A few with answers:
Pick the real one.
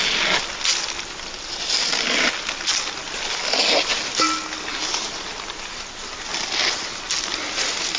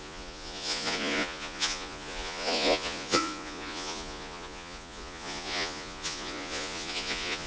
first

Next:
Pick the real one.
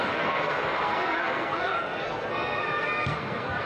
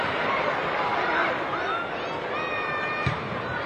second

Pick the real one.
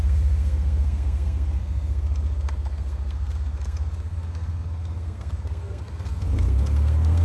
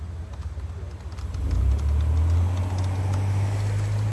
second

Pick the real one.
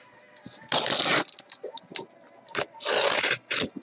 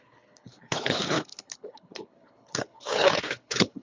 first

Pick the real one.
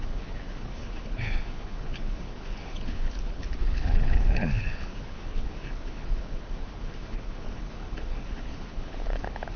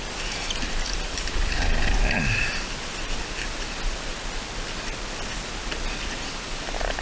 second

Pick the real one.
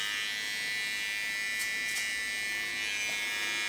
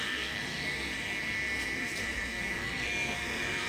first